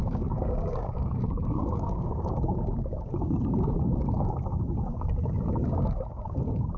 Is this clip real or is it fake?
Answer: fake